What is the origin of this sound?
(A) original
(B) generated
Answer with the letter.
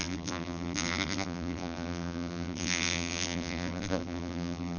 B